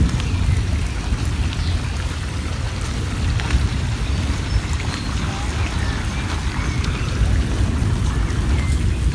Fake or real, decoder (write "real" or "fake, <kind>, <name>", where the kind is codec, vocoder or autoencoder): real